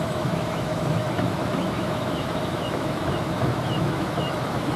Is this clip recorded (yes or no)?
no